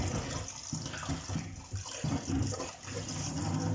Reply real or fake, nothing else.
real